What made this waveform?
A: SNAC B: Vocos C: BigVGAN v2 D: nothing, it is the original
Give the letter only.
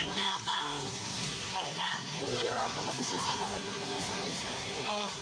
A